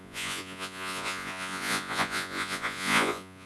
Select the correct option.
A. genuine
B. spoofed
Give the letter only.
B